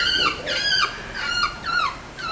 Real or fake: fake